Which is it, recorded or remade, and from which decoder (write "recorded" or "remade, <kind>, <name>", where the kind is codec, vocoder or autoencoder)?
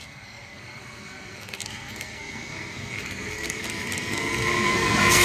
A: remade, codec, SNAC